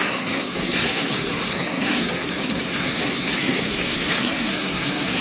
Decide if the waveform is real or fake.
fake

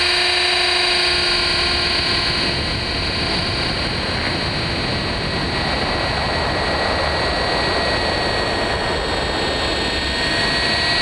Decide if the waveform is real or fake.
real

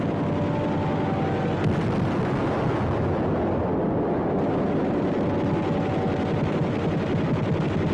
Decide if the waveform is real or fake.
real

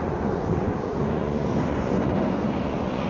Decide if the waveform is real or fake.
fake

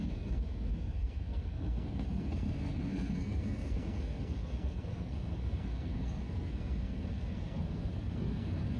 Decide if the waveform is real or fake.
fake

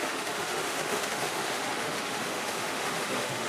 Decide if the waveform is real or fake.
fake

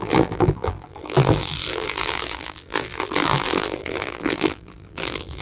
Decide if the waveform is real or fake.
fake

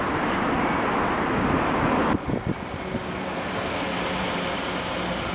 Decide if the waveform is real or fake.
real